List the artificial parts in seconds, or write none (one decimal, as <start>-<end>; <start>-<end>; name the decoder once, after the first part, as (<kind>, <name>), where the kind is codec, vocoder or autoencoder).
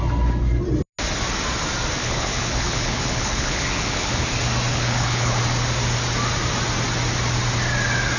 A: 2.0-4.3 (codec, HILCodec); 4.7-5.4